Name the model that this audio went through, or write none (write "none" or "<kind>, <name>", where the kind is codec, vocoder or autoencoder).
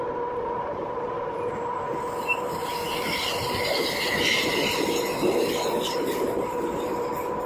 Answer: none